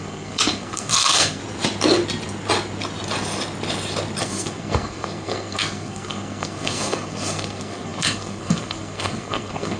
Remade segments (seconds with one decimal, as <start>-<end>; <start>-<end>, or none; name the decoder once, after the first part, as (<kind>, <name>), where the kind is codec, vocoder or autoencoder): 0.0-1.4 (codec, SNAC); 4.2-9.8